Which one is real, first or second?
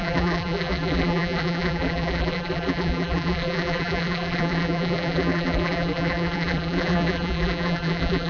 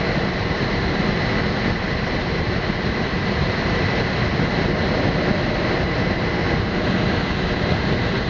second